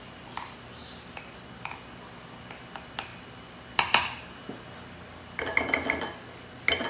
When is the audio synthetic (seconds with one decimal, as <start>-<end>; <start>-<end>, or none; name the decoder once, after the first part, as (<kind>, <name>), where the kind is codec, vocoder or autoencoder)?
0.8-1.3 (vocoder, BigVGAN v2); 3.1-3.6